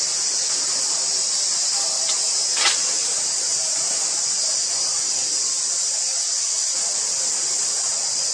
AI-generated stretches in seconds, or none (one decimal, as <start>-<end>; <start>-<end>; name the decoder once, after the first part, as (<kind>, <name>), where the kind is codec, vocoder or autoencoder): none